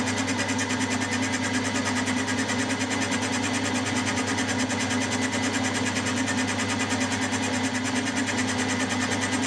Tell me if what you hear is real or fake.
real